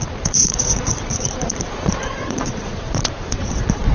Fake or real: fake